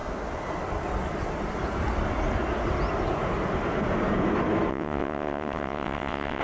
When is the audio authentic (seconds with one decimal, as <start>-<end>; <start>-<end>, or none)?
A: 0.0-4.7